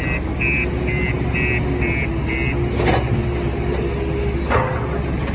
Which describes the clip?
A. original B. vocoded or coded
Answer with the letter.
A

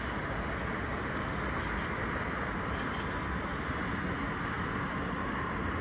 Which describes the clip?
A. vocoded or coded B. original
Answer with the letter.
B